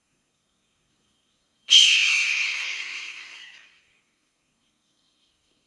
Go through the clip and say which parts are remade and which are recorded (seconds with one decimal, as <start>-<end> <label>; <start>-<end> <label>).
0.0-5.7 remade